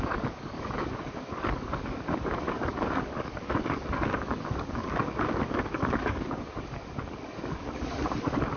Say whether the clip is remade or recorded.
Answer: remade